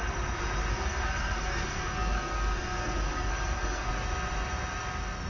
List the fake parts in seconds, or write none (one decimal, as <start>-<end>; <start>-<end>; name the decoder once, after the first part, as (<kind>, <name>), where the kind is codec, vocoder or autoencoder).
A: 0.7-3.9 (codec, SNAC)